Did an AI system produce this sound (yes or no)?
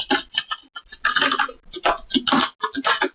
no